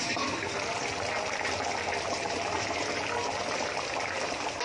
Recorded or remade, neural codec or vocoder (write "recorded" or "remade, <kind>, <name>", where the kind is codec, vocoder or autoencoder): recorded